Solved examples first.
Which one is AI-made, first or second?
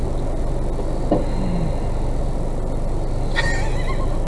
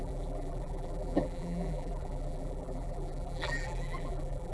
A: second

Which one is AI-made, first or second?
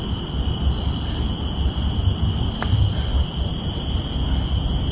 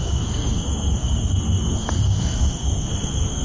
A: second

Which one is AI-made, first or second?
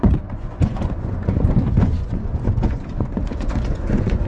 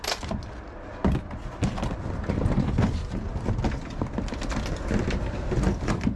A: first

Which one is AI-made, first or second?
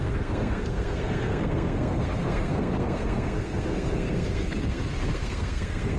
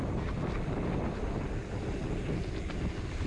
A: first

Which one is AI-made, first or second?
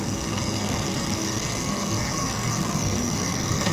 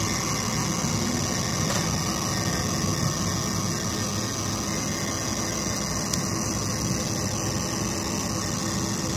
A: first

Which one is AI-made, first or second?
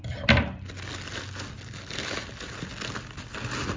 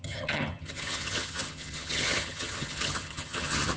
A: second